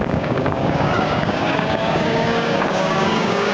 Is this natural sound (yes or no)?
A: no